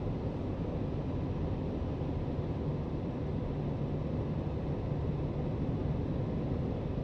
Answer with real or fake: real